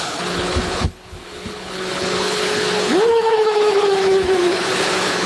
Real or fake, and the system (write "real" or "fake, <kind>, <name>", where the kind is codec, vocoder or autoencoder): fake, codec, HILCodec